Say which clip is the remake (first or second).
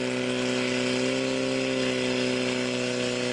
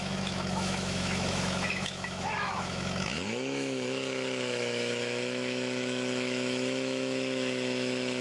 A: second